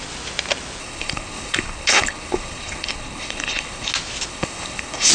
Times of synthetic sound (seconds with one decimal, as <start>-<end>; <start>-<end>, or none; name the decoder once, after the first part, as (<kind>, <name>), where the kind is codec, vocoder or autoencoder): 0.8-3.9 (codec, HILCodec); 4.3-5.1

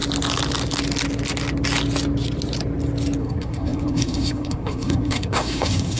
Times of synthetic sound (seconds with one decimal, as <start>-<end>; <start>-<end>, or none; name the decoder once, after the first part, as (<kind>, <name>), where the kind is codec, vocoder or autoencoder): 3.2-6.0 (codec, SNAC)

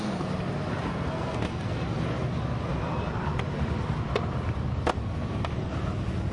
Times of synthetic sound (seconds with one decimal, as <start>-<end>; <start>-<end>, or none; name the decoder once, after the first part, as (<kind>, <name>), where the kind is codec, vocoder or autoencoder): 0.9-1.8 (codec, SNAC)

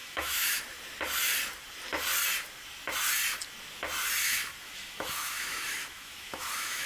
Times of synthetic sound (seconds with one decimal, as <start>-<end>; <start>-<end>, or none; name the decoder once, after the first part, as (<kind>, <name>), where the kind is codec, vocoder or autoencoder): 0.0-0.6 (autoencoder, DAC-VAE); 4.2-6.9